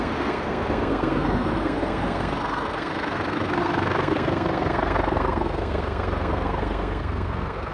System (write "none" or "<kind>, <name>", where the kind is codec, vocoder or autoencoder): codec, SNAC